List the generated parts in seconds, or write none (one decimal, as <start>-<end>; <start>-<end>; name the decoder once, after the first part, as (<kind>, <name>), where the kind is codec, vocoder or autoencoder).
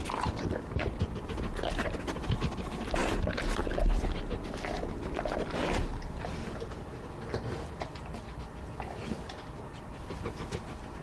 none